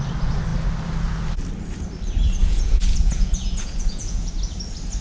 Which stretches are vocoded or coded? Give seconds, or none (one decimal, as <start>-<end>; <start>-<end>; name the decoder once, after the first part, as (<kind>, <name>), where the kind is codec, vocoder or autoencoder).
2.4-4.3 (vocoder, Vocos)